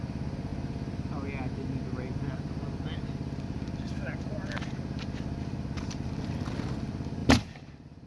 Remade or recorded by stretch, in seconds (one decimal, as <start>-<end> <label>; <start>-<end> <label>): 0.0-7.2 recorded; 7.2-8.1 remade